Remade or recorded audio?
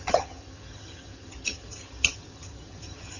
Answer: remade